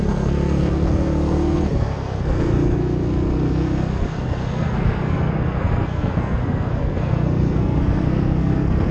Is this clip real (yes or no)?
no